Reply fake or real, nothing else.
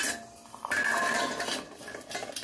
real